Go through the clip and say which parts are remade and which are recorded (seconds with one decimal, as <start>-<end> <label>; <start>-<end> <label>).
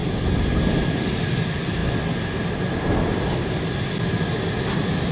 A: 0.0-5.1 recorded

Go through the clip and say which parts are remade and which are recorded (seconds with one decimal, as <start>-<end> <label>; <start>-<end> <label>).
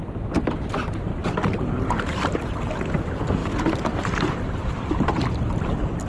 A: 0.0-0.7 recorded; 0.7-6.1 remade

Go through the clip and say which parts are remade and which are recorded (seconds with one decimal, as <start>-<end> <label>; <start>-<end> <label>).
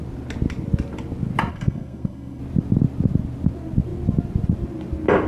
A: 0.0-1.5 recorded; 1.5-2.4 remade; 2.4-5.3 recorded